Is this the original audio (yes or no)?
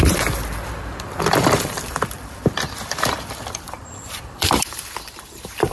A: no